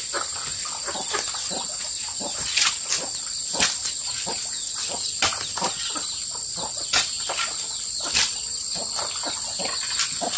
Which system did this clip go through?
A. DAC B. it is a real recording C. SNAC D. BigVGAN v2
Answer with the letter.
B